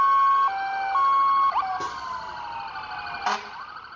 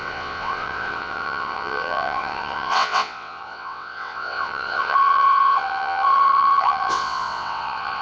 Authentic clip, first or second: first